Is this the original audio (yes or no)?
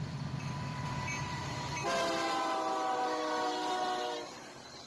yes